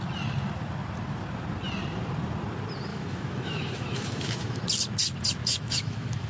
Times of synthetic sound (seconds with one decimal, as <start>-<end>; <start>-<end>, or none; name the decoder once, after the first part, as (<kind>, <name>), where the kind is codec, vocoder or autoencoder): 2.9-4.6 (autoencoder, DAC-VAE); 5.4-6.3